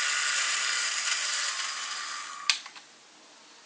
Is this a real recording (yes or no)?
yes